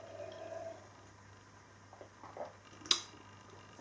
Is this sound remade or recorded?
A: recorded